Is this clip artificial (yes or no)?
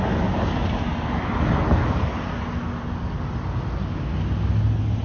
no